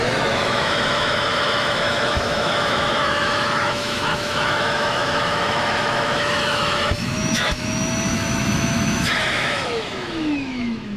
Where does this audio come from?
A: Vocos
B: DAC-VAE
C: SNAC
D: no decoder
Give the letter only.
B